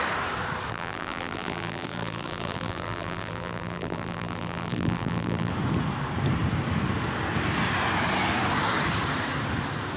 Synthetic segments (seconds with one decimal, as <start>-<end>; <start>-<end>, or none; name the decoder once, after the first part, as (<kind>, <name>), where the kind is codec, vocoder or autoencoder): 0.7-5.5 (vocoder, BigVGAN v2)